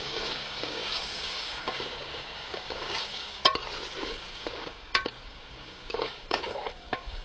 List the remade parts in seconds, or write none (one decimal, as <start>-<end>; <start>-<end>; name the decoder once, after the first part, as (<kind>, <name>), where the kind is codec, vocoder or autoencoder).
0.0-3.4 (codec, DAC); 4.0-7.2